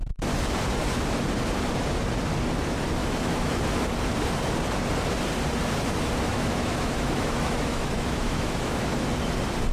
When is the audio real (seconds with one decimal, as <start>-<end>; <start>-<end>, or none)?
0.0-3.0; 3.6-6.3; 8.9-9.7